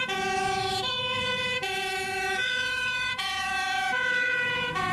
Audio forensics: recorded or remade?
remade